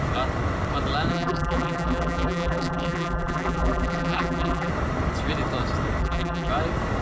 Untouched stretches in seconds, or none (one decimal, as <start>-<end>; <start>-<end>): 0.0-1.1; 4.7-6.0; 6.5-7.0